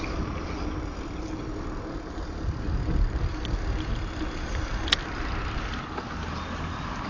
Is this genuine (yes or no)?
yes